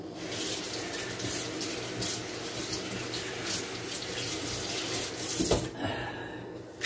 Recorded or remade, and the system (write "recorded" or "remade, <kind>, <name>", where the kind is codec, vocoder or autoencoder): recorded